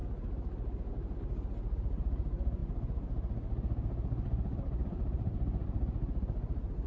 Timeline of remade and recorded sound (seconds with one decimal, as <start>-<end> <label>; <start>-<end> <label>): 0.0-6.9 recorded